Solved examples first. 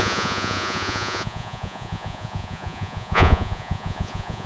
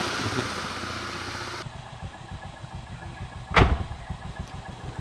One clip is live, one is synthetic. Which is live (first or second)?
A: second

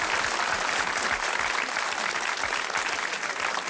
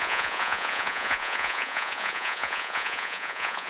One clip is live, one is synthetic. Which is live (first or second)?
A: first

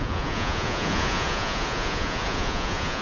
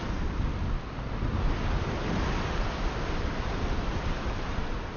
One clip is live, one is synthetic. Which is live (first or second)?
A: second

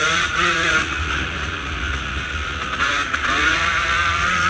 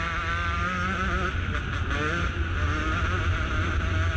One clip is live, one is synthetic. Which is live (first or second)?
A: second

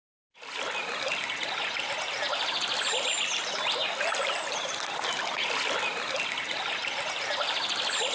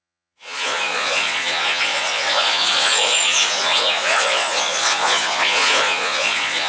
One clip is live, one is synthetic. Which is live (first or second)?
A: first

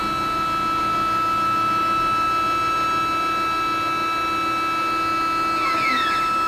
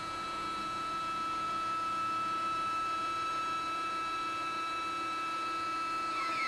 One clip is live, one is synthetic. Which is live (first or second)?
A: first